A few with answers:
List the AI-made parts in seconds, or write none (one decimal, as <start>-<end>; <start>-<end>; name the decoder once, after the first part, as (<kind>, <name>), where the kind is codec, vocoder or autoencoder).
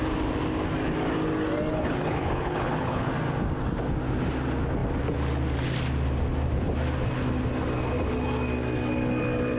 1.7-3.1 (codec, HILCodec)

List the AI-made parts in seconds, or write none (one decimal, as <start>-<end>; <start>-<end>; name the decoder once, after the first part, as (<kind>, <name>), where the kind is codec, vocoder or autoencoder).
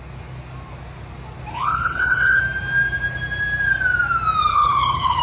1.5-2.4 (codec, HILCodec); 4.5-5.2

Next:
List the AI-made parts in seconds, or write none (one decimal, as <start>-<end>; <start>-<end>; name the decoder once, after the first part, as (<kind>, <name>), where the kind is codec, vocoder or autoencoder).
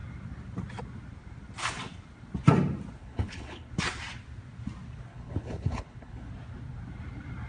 3.0-3.7 (codec, HILCodec); 5.1-6.3